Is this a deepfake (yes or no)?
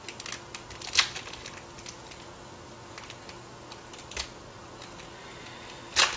no